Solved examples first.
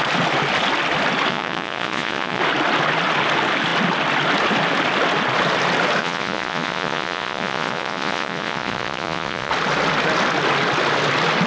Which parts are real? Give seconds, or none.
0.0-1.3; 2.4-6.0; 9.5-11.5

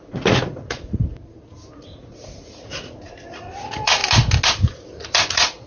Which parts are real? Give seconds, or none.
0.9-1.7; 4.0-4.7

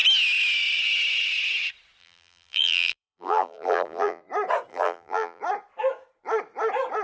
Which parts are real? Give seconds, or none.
0.0-2.0; 4.2-4.7; 5.4-7.0

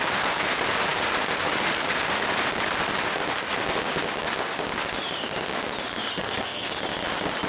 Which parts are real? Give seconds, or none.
0.0-6.2; 6.7-7.5

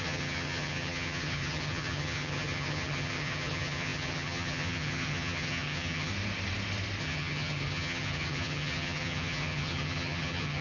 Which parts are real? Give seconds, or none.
6.1-7.0

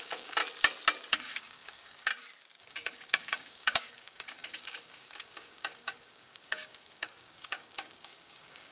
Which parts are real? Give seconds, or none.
0.4-1.1; 2.1-2.6

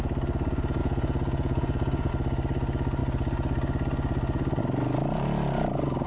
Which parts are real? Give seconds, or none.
0.0-0.8; 2.1-6.1

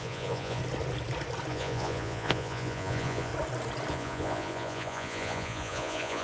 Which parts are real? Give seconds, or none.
0.6-1.5; 3.3-3.9